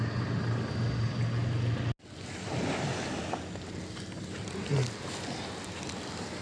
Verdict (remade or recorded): recorded